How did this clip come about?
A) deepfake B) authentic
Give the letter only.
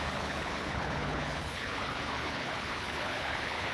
A